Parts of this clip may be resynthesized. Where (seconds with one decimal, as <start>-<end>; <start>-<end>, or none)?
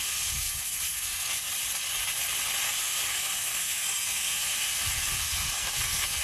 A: 0.0-1.5; 2.8-6.2